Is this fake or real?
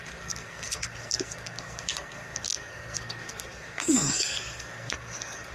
fake